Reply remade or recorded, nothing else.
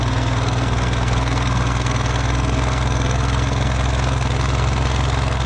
remade